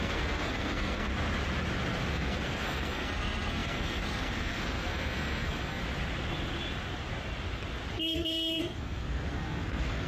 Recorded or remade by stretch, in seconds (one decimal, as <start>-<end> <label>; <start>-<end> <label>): 0.0-1.1 remade; 1.1-2.1 recorded; 2.1-5.8 remade; 5.8-7.9 recorded; 7.9-10.1 remade